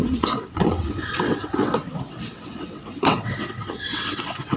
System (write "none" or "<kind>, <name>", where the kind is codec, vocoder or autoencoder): vocoder, WaveNeXt